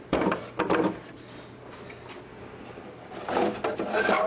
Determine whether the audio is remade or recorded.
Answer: recorded